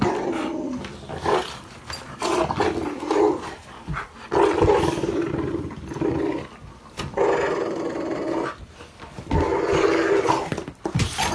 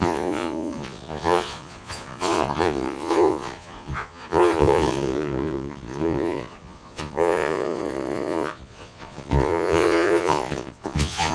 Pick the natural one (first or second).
first